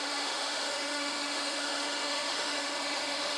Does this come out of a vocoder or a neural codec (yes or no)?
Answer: yes